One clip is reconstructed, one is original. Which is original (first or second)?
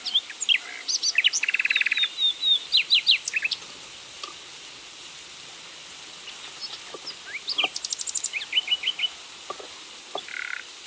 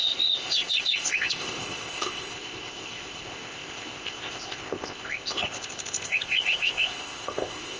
first